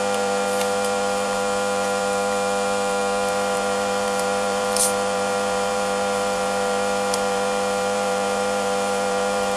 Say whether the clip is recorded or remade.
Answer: remade